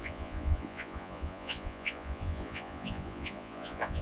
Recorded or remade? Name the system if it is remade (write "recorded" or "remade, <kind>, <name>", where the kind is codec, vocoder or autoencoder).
remade, vocoder, Vocos